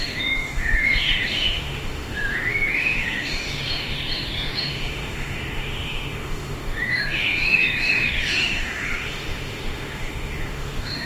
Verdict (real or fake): fake